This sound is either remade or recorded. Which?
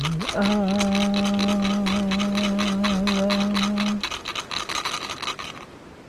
recorded